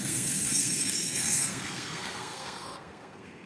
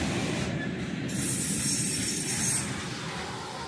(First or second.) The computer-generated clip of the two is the first